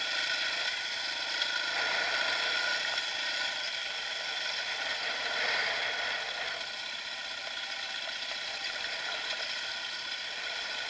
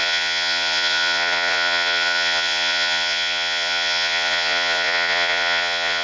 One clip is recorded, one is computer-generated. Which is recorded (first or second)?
first